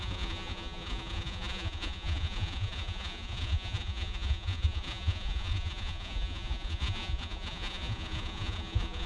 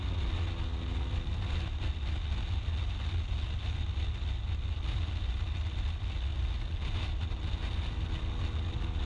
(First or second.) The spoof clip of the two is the first